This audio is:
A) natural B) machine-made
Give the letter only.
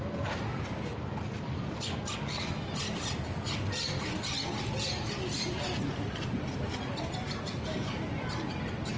A